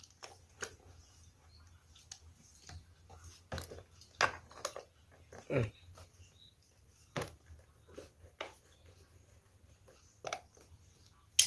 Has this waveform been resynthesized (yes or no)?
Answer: no